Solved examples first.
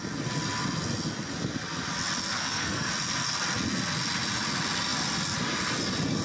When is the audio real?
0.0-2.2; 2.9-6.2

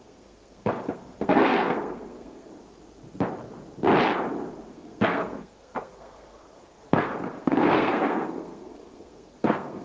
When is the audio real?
2.5-4.7

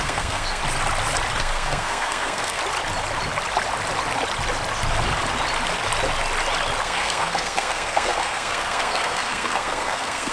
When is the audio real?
0.6-1.4; 2.6-6.8

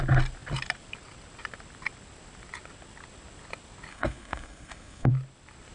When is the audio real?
0.0-3.9; 5.1-5.7

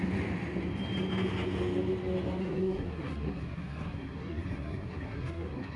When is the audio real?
0.0-2.4